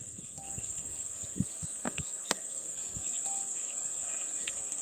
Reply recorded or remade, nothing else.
remade